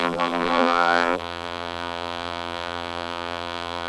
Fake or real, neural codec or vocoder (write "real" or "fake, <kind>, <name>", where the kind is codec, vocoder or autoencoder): fake, vocoder, BigVGAN v2